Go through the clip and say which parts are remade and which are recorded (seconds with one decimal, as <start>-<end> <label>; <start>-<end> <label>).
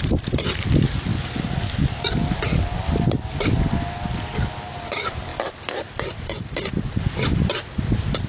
0.0-8.3 recorded